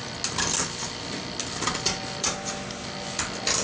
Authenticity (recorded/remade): recorded